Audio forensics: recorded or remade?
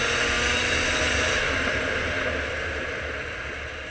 recorded